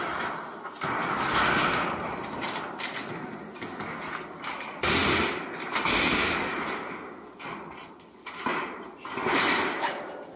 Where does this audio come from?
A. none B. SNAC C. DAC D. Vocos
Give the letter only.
A